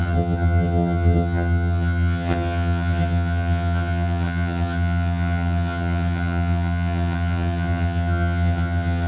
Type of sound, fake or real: fake